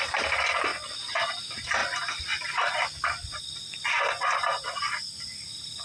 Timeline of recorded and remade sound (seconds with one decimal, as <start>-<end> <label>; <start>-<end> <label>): 0.0-1.8 remade; 1.8-4.8 recorded; 4.8-5.8 remade